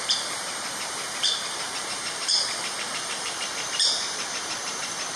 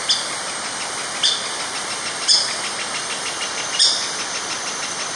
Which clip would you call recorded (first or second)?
second